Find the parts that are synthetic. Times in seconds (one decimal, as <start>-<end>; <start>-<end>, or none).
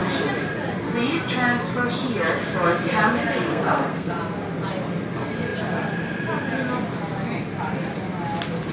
3.5-4.1